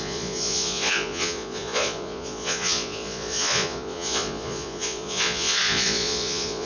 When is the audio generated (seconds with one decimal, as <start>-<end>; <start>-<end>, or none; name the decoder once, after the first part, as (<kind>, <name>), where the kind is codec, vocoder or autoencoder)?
0.0-6.7 (vocoder, Vocos)